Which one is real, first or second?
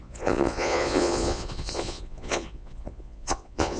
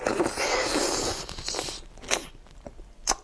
second